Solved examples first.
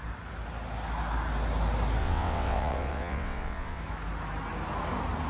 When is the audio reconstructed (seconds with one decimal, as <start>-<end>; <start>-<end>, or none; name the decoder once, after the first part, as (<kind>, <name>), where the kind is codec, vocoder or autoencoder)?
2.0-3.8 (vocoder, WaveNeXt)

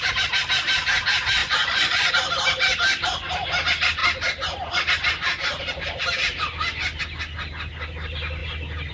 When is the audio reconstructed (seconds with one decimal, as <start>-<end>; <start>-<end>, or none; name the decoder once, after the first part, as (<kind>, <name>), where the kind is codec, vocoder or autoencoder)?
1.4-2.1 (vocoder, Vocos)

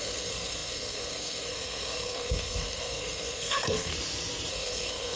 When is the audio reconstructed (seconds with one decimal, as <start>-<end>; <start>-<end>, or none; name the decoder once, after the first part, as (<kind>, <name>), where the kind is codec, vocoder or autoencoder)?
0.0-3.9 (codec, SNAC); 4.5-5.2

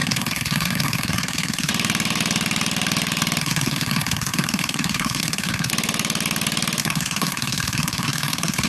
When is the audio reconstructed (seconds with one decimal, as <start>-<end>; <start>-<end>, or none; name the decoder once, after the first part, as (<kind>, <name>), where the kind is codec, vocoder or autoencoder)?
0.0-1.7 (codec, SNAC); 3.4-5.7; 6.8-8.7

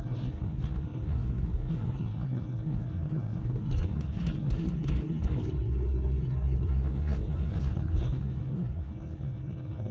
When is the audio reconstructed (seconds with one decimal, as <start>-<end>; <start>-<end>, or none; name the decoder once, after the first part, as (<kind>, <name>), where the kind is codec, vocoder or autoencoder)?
0.0-9.9 (codec, SNAC)

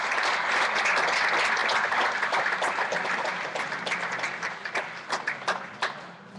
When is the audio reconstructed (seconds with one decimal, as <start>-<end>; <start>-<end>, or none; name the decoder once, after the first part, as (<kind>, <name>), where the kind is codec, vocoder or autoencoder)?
none

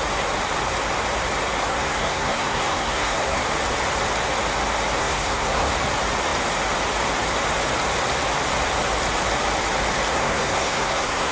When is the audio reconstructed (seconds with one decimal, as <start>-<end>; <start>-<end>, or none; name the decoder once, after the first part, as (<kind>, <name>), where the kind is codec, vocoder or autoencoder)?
1.7-3.4 (codec, SNAC); 5.0-5.7; 10.1-11.3

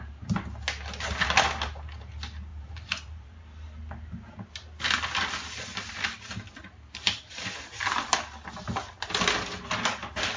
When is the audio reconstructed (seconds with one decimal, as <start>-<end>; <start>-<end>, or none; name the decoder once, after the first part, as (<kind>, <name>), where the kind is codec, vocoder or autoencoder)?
2.5-3.4 (vocoder, BigVGAN v2)